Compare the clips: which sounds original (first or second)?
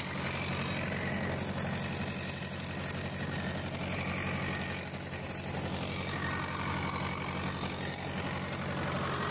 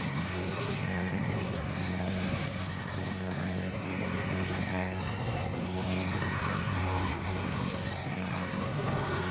first